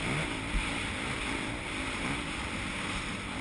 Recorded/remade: recorded